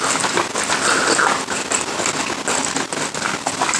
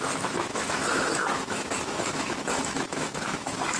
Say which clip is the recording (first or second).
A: first